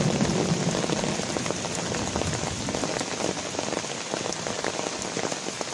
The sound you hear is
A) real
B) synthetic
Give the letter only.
A